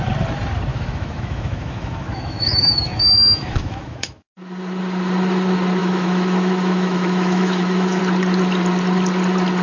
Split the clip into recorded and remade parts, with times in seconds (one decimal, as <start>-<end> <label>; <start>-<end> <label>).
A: 0.0-0.7 recorded; 0.7-4.4 remade; 4.4-5.8 recorded; 5.8-8.0 remade; 8.0-9.6 recorded